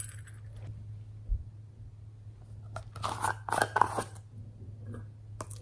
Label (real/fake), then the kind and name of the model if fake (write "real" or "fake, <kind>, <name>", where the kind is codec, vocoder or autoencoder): real